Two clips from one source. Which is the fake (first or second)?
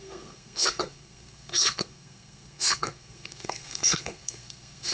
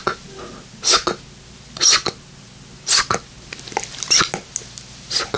first